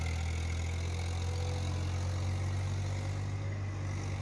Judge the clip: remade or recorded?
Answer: recorded